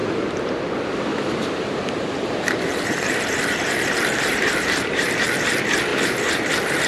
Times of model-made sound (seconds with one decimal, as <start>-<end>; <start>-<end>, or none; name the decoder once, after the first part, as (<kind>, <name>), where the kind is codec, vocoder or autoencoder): 0.0-0.7 (vocoder, BigVGAN v2); 1.1-5.2; 5.9-6.5